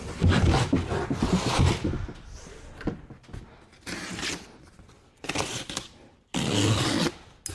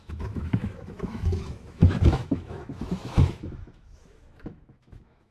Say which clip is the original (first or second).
first